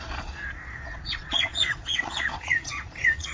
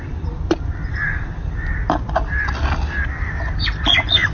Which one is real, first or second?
second